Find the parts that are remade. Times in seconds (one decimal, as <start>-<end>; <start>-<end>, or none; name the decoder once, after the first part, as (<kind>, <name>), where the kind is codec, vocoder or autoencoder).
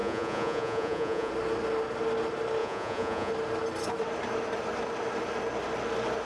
0.0-1.3 (vocoder, Vocos); 2.6-3.3